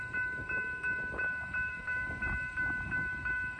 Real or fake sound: fake